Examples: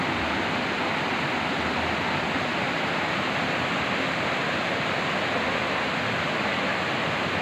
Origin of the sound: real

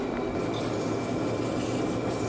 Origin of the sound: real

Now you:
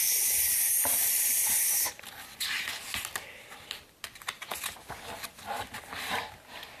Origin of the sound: real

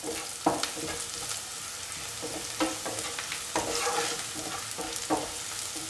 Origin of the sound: real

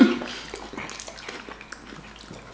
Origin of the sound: real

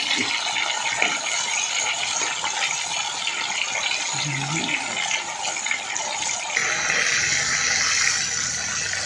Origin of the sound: real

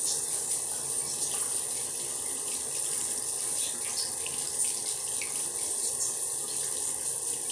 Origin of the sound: real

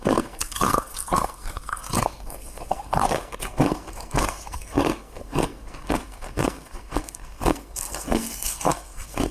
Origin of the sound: fake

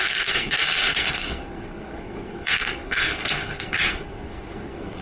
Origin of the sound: fake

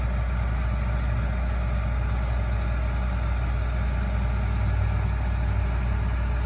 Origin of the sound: real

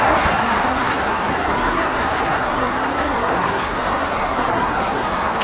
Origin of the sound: fake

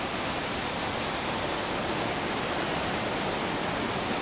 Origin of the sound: real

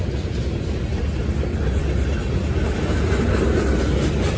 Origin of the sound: real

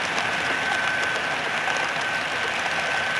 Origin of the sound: real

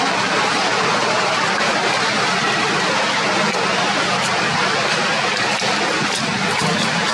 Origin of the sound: real